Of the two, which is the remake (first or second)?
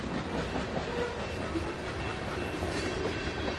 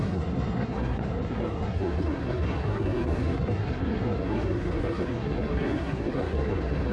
second